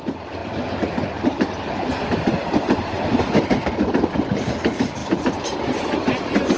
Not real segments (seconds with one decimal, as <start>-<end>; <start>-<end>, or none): none